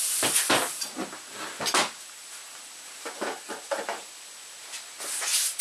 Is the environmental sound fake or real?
real